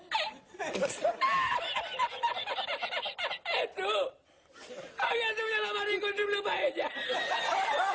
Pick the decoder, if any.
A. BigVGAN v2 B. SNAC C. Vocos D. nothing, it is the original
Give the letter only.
D